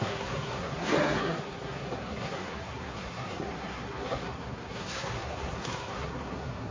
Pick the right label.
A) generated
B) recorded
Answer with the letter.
A